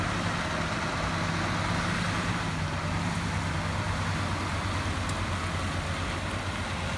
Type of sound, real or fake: real